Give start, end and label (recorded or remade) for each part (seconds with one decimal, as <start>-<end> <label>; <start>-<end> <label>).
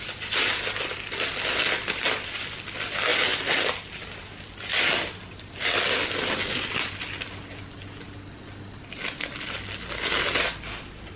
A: 0.0-11.2 recorded